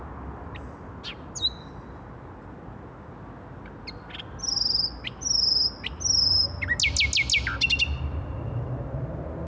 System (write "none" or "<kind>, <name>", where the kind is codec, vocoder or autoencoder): none